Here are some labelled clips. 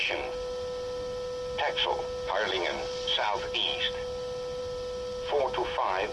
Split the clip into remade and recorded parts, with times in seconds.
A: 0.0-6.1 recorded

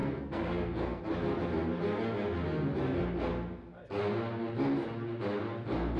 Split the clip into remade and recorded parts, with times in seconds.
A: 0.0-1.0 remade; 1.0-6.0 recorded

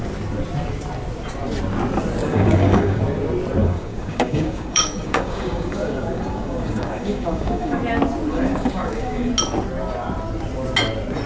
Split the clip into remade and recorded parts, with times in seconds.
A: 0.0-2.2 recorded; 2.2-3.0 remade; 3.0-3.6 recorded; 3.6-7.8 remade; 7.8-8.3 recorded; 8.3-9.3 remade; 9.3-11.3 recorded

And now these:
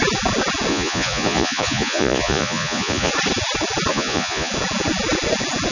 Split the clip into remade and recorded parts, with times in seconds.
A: 0.0-0.7 recorded; 0.7-3.1 remade; 3.1-3.9 recorded; 3.9-4.5 remade; 4.5-5.7 recorded

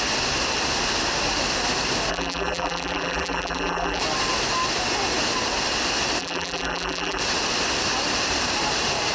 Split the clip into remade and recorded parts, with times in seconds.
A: 0.0-2.1 recorded; 2.1-4.0 remade; 4.0-6.2 recorded; 6.2-7.2 remade; 7.2-9.1 recorded

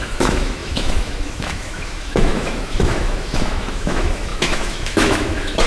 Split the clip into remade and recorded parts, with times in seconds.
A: 0.0-5.7 remade

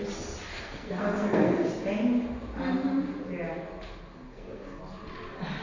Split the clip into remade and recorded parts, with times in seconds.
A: 0.0-0.5 recorded; 0.5-1.7 remade; 1.7-4.1 recorded; 4.1-4.8 remade; 4.8-5.6 recorded

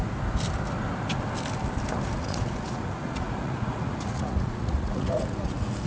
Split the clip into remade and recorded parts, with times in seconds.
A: 0.0-2.2 recorded; 2.2-5.9 remade